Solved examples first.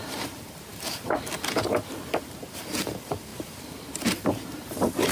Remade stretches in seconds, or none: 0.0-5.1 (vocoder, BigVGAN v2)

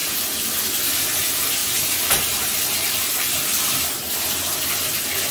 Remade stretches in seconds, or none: 1.6-3.0 (vocoder, BigVGAN v2)

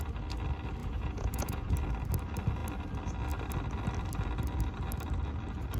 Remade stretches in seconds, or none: 0.8-1.7 (vocoder, Vocos)